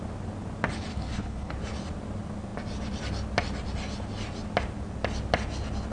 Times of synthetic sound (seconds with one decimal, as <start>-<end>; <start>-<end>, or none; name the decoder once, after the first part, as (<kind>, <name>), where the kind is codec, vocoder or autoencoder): 0.9-1.5 (codec, HILCodec)